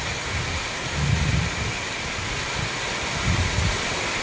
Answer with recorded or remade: recorded